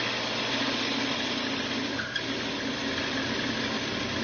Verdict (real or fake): real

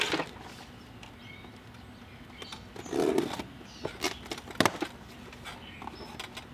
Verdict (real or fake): real